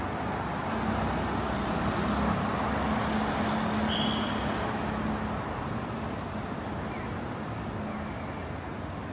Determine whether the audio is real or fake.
real